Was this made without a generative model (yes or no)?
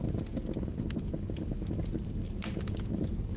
yes